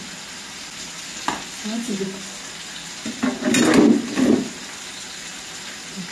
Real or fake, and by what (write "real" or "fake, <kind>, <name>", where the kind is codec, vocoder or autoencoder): real